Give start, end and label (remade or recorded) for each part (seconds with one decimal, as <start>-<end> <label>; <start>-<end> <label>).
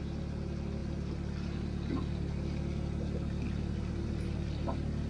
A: 0.0-5.1 recorded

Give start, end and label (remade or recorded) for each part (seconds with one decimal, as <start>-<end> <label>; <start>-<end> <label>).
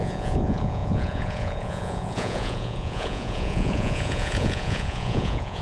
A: 0.0-5.6 remade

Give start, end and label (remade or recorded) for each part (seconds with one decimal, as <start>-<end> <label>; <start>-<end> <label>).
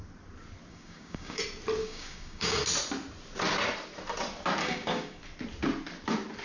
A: 0.0-0.7 recorded; 0.7-1.4 remade; 1.4-1.8 recorded; 1.8-2.6 remade; 2.6-4.6 recorded; 4.6-5.2 remade; 5.2-6.4 recorded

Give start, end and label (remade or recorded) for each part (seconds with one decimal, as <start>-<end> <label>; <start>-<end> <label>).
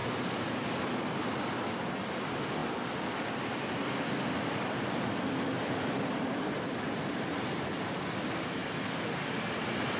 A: 0.0-10.0 recorded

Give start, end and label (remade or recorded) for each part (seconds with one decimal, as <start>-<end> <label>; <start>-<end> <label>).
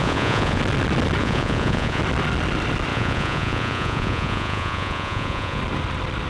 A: 0.0-0.6 remade; 0.6-1.2 recorded; 1.2-2.0 remade; 2.0-2.9 recorded; 2.9-5.6 remade; 5.6-6.3 recorded